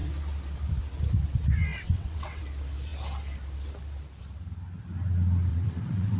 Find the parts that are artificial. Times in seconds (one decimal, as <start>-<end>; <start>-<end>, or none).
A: 1.7-2.4; 5.5-6.2